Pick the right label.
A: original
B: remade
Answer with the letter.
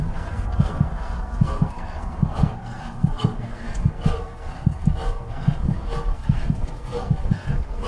B